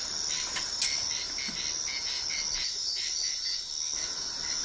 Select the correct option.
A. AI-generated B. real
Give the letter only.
B